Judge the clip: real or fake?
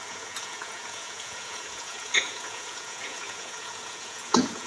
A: fake